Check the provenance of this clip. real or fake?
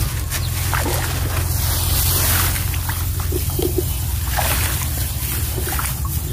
real